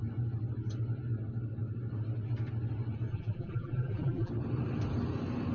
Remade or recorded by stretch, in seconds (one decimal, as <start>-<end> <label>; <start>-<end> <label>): 0.0-3.1 recorded; 3.1-4.3 remade; 4.3-5.5 recorded